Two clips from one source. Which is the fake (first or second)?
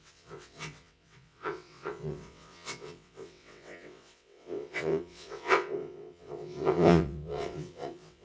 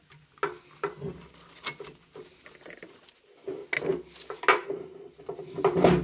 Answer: first